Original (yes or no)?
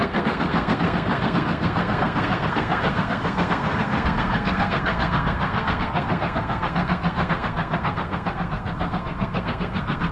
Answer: no